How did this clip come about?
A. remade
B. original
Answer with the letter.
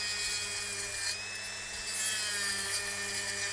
B